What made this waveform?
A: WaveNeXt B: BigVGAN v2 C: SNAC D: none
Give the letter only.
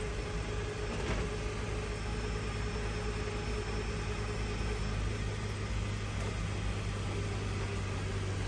D